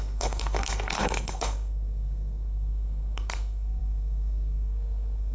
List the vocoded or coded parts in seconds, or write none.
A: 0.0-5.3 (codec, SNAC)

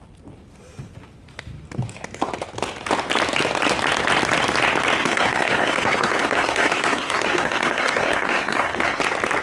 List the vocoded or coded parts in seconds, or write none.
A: 5.0-9.0 (codec, SNAC)

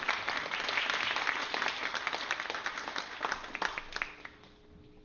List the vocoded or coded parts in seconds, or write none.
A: none

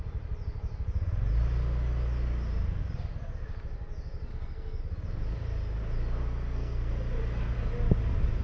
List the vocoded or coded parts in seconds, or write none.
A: 4.3-4.8 (codec, SNAC); 6.2-6.9

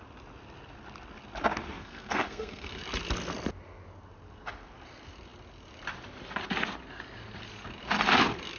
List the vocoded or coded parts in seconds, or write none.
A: 1.8-2.8 (codec, SNAC)

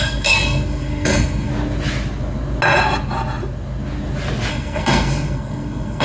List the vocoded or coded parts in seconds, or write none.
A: 0.0-1.5 (codec, SNAC); 4.5-6.0